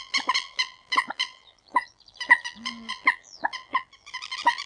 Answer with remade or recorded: remade